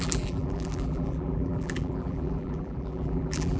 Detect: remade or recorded remade